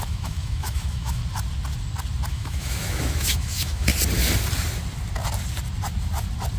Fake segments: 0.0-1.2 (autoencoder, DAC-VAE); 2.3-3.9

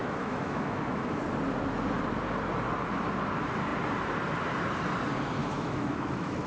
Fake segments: 0.0-1.2 (autoencoder, DAC-VAE); 5.4-6.5

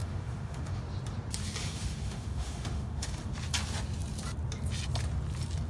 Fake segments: 0.0-0.8 (autoencoder, DAC-VAE); 1.6-3.2

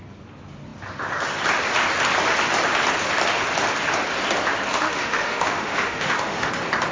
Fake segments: 4.7-6.5 (autoencoder, DAC-VAE)

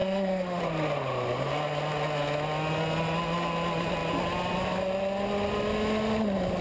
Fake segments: 0.0-0.6 (autoencoder, DAC-VAE)

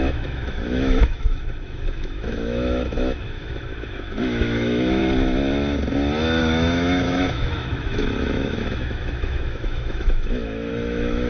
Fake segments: 0.0-5.0 (autoencoder, DAC-VAE); 6.4-11.3